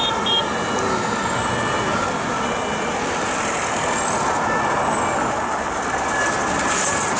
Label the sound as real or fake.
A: real